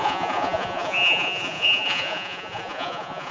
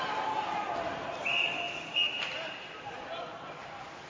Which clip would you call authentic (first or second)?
second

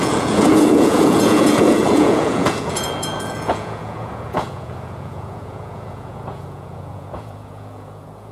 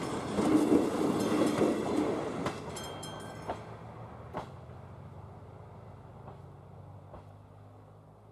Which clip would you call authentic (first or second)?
second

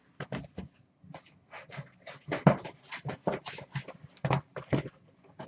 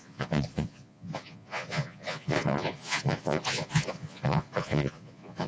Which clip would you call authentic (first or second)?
first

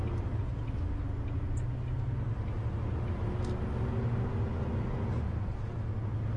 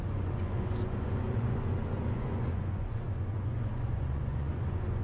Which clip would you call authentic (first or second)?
first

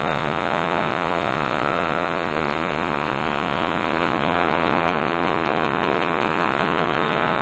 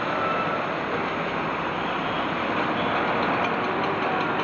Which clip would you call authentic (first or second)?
second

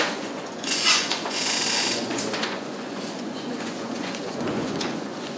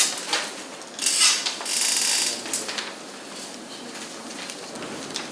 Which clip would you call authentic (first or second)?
second